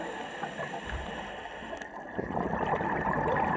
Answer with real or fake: real